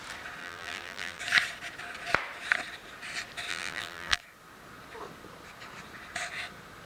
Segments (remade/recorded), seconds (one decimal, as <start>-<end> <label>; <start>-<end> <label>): 0.0-0.4 recorded; 0.4-1.2 remade; 1.2-3.5 recorded; 3.5-4.2 remade; 4.2-6.9 recorded